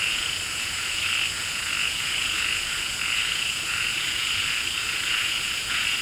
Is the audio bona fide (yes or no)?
no